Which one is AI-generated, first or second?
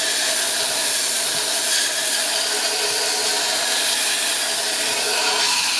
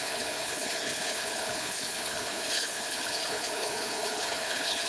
second